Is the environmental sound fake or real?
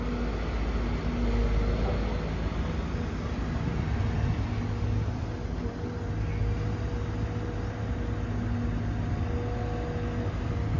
real